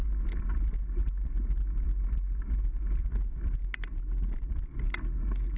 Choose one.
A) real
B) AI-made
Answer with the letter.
A